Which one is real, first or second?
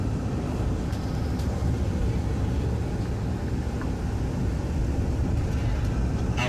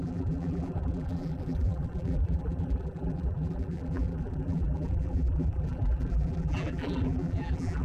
first